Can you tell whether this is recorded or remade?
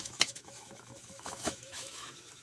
remade